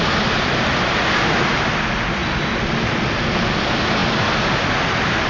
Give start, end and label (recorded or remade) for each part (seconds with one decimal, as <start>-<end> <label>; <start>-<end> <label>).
0.0-5.3 recorded